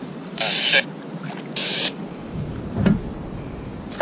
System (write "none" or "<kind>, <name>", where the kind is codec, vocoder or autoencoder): none